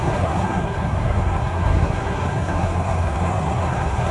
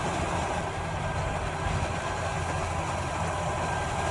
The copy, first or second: first